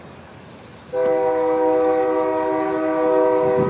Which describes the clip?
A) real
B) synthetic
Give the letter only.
A